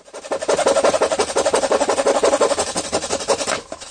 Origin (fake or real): real